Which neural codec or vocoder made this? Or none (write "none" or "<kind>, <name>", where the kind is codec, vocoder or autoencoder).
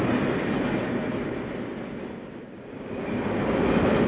none